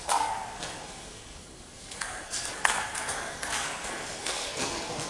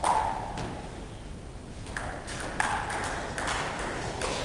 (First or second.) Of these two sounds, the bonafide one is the second